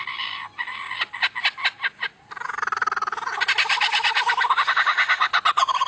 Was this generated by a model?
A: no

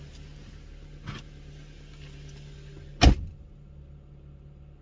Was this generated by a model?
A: no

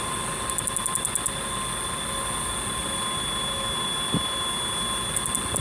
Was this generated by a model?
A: no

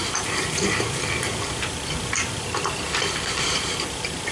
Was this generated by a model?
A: yes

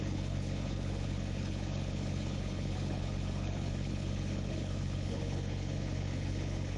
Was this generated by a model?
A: yes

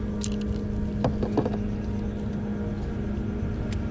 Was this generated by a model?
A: no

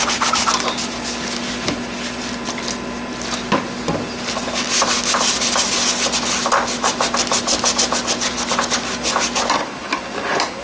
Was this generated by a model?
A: no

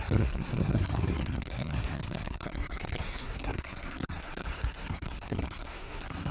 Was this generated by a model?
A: yes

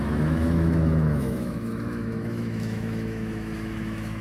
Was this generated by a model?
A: yes